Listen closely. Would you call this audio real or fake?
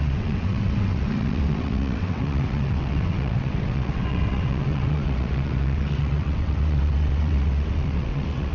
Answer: fake